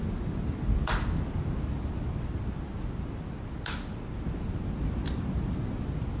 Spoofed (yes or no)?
no